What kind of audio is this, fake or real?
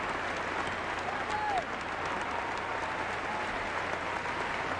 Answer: real